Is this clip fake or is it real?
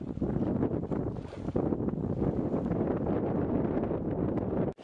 real